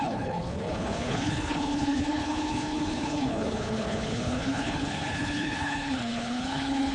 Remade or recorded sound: remade